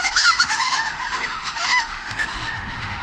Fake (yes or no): yes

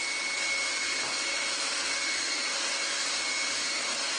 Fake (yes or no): no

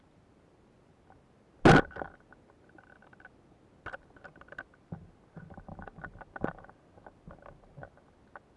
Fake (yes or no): no